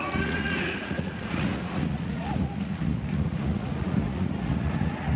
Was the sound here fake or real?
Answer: fake